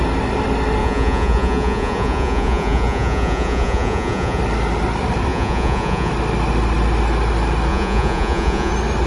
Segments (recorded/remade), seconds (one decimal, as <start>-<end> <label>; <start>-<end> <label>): 0.0-0.8 recorded; 0.8-4.4 remade; 4.4-5.3 recorded; 5.3-6.1 remade; 6.1-7.7 recorded; 7.7-8.7 remade; 8.7-9.1 recorded